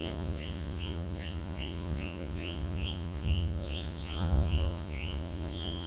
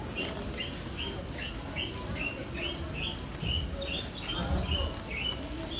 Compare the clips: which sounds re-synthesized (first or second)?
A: first